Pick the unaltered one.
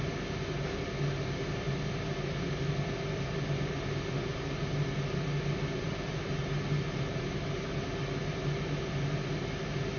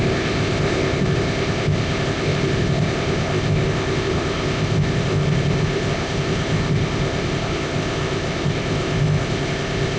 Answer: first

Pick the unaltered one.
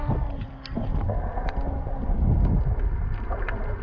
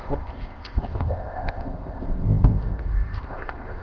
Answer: first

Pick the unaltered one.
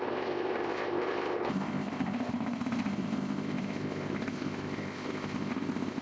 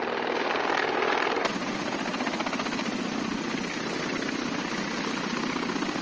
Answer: second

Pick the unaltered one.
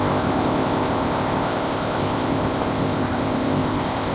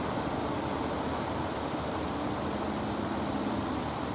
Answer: second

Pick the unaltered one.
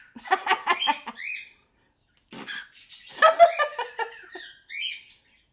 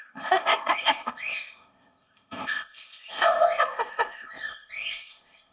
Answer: first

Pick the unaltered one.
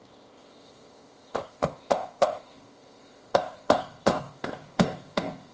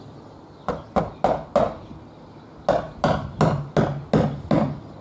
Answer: second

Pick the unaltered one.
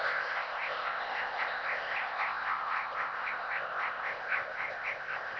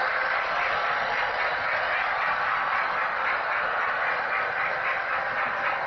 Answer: second